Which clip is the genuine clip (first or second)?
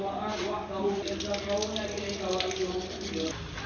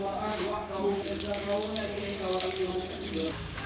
first